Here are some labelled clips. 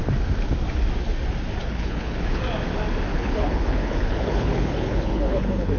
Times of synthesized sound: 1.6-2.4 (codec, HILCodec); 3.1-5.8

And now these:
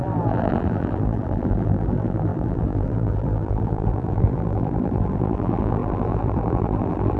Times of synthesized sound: 0.0-7.2 (vocoder, BigVGAN v2)

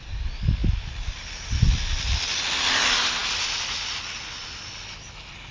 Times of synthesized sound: none

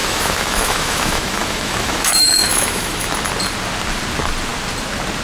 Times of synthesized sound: 0.0-3.1 (autoencoder, DAC-VAE)

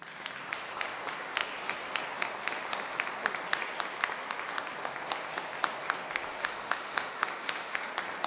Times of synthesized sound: 6.4-7.9 (autoencoder, DAC-VAE)

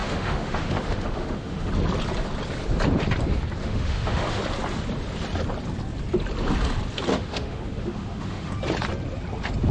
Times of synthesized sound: 0.0-1.7 (autoencoder, DAC-VAE); 3.6-4.4; 7.1-8.5

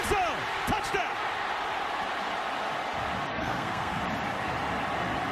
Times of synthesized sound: 3.3-4.0 (codec, SNAC)

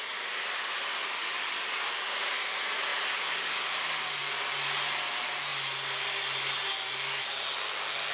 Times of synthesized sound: none